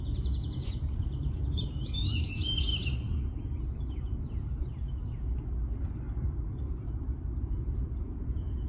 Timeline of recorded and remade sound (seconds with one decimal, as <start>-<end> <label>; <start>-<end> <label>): 0.0-2.7 remade; 2.7-4.0 recorded; 4.0-4.7 remade; 4.7-7.4 recorded; 7.4-8.7 remade